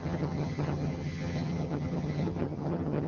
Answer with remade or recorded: remade